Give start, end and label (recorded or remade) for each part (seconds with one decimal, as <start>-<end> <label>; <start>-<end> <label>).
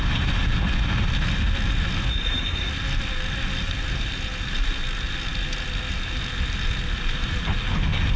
0.0-2.1 recorded; 2.1-2.7 remade; 2.7-8.2 recorded